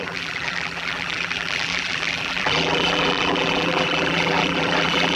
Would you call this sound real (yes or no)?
no